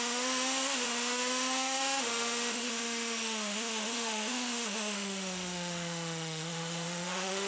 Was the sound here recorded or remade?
remade